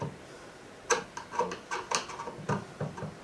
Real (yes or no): yes